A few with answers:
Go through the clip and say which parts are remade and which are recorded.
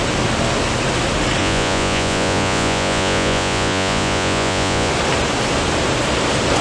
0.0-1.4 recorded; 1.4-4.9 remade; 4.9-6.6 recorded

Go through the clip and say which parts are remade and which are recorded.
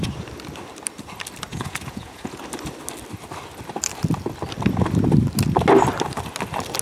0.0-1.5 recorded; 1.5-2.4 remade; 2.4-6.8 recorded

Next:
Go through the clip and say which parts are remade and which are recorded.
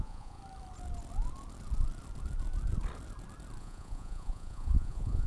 0.0-0.4 remade; 0.4-3.6 recorded; 3.6-5.3 remade